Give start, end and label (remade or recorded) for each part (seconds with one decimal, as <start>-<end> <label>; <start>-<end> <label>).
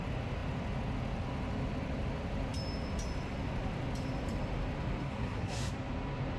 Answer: 0.0-5.0 recorded; 5.0-5.7 remade; 5.7-6.4 recorded